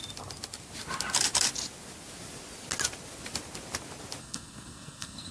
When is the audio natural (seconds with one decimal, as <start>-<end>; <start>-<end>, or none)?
0.0-4.2